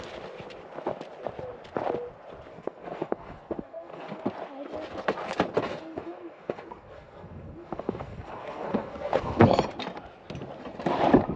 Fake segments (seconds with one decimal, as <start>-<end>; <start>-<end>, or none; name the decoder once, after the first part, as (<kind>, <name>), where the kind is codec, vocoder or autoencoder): 2.5-4.2 (codec, SNAC); 5.7-9.6